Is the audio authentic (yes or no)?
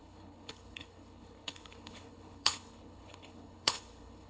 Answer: no